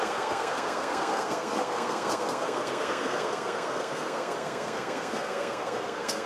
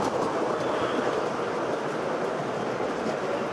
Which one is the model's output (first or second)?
first